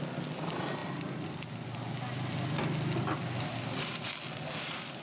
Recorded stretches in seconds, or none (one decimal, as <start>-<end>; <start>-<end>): 0.0-5.0